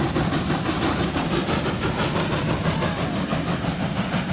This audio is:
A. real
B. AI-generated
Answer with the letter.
A